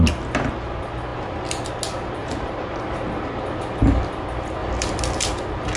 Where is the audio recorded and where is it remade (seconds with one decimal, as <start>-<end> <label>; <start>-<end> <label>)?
0.0-2.2 recorded; 2.2-2.8 remade; 2.8-5.8 recorded